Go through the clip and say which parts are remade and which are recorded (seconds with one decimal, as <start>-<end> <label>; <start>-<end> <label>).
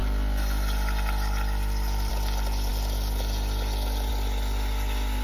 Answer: 0.0-5.2 recorded